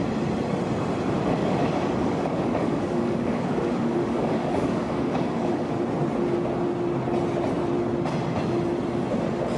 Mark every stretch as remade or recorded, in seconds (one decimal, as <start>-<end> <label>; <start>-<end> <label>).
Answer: 0.0-1.4 recorded; 1.4-5.7 remade; 5.7-9.6 recorded